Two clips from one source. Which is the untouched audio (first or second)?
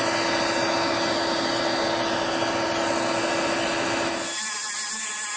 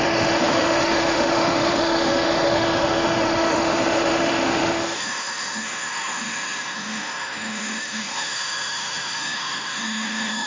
first